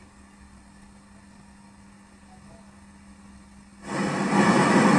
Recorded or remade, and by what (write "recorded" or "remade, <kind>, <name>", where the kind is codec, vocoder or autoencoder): recorded